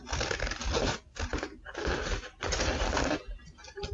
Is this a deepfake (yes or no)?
no